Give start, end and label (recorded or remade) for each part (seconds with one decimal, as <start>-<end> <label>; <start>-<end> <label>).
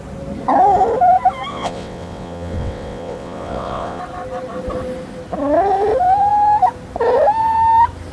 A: 0.0-1.5 recorded; 1.5-4.0 remade; 4.0-8.1 recorded